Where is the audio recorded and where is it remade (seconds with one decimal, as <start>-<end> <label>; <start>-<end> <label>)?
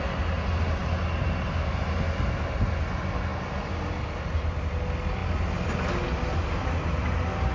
0.0-7.5 recorded